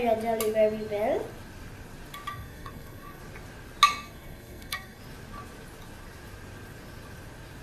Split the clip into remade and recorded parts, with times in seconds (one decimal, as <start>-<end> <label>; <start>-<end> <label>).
0.0-2.3 recorded; 2.3-3.2 remade; 3.2-3.9 recorded; 3.9-5.0 remade; 5.0-7.6 recorded